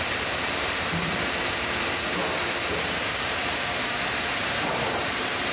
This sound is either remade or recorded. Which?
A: remade